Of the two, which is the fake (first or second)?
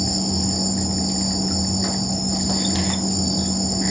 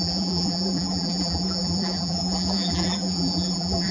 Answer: second